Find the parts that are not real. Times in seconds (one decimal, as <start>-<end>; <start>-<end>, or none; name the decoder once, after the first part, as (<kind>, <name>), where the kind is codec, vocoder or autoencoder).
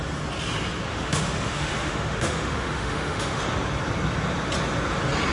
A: 0.9-3.4 (autoencoder, DAC-VAE)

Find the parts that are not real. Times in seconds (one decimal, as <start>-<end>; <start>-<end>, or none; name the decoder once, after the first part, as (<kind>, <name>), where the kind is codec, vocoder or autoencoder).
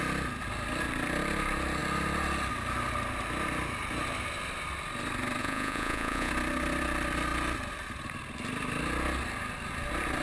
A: 5.4-6.3 (vocoder, Vocos)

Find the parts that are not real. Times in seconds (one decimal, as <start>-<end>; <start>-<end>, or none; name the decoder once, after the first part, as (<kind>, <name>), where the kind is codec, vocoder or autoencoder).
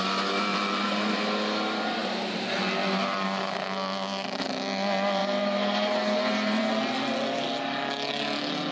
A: 0.5-1.1 (vocoder, BigVGAN v2); 2.0-2.6; 5.2-6.7